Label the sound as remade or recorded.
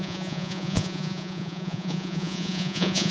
remade